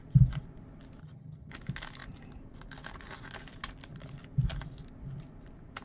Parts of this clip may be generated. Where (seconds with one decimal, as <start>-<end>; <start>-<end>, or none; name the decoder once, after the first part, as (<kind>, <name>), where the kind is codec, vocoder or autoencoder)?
1.0-1.5 (vocoder, HiFi-GAN)